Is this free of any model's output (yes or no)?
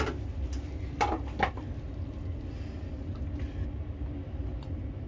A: yes